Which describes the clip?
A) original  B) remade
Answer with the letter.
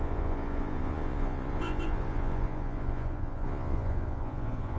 B